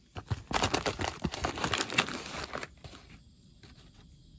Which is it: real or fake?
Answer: real